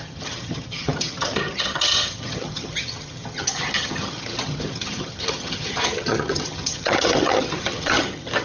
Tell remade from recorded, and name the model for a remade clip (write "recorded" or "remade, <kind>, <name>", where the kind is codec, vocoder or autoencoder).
remade, vocoder, HiFi-GAN